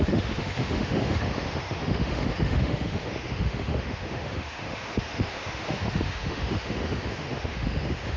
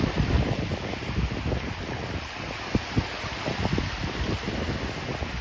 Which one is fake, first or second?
first